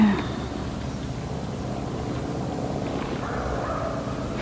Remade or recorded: recorded